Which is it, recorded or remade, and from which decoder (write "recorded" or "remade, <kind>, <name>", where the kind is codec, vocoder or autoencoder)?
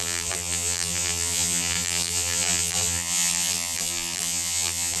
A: remade, vocoder, BigVGAN v2